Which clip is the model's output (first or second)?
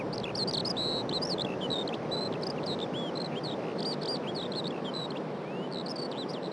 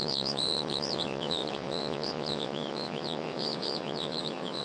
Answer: second